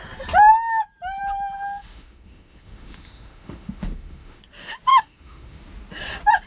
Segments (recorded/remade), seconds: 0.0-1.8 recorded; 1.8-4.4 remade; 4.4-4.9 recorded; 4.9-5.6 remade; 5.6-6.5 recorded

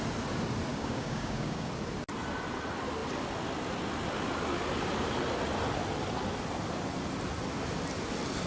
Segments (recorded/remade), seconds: 0.0-0.7 recorded; 0.7-1.7 remade; 1.7-8.5 recorded

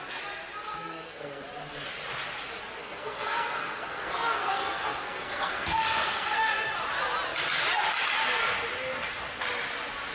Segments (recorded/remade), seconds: 0.0-0.6 recorded; 0.6-1.4 remade; 1.4-2.8 recorded; 2.8-6.4 remade; 6.4-10.1 recorded

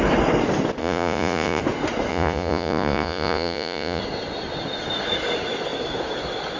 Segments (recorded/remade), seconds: 0.0-0.8 recorded; 0.8-1.6 remade; 1.6-2.1 recorded; 2.1-4.0 remade; 4.0-6.6 recorded